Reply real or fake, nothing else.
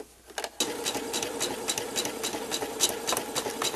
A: real